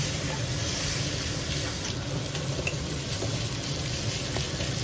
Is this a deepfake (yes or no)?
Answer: no